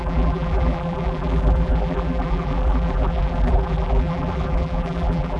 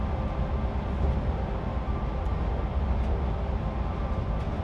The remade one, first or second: first